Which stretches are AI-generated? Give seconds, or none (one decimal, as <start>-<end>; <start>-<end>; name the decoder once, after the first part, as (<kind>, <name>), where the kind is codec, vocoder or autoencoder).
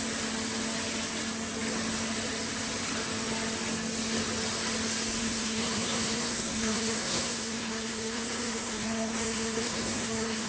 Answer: 5.2-10.5 (codec, SNAC)